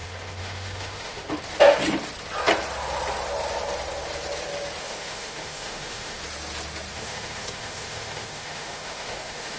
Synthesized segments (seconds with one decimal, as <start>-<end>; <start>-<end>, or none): 0.0-1.3; 4.8-6.2; 6.9-9.6